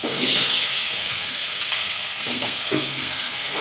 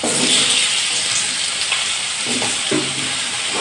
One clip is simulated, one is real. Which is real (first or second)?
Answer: second